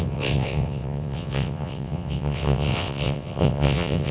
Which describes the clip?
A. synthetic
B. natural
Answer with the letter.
A